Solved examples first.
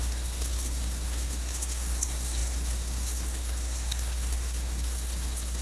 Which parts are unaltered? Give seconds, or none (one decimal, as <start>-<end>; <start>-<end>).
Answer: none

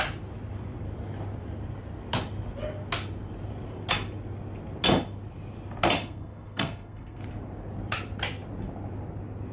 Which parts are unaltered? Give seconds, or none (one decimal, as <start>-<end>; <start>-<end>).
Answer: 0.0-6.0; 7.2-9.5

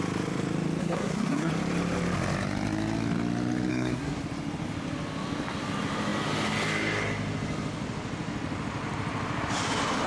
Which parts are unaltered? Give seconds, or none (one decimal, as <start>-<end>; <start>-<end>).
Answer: 0.0-0.8; 1.5-3.7; 4.2-10.1